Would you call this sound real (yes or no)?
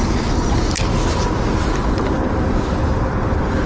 yes